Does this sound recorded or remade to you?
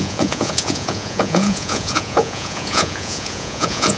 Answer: remade